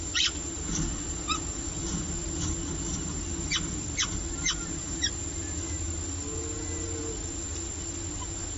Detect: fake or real fake